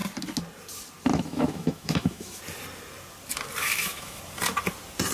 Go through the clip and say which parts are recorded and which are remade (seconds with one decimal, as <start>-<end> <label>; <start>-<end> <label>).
0.0-1.1 recorded; 1.1-2.4 remade; 2.4-3.6 recorded; 3.6-4.2 remade; 4.2-5.1 recorded